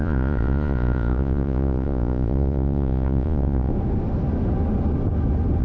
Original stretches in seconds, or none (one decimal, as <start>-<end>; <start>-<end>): 3.7-5.6

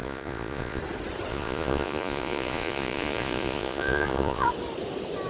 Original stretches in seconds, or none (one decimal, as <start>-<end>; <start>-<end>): 0.8-1.3; 4.5-5.3

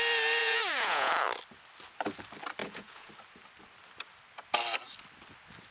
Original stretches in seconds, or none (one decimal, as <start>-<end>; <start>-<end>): 0.0-0.4; 1.1-2.6; 3.1-5.7

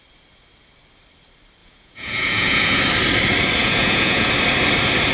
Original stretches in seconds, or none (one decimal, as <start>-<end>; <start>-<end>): 0.0-1.6; 2.8-3.6; 4.3-5.1

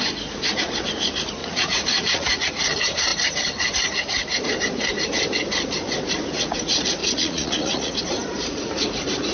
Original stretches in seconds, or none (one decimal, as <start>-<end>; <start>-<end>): 0.0-1.4; 2.5-7.0; 7.9-9.3

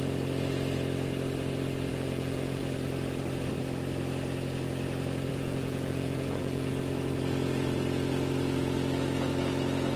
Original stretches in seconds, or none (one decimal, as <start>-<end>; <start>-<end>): 0.0-1.9; 2.6-5.3; 6.7-10.0